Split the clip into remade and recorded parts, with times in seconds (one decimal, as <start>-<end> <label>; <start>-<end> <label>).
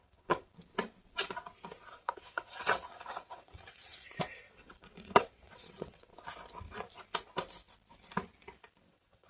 0.0-0.5 remade; 0.5-1.9 recorded; 1.9-6.1 remade; 6.1-8.9 recorded; 8.9-9.3 remade